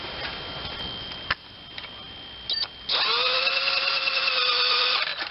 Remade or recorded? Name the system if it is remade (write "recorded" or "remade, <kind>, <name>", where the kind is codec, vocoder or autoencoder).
recorded